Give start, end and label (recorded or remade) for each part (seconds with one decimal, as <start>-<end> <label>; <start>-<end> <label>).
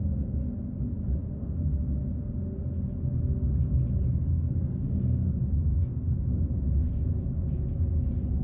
0.0-4.3 recorded; 4.3-5.3 remade; 5.3-8.4 recorded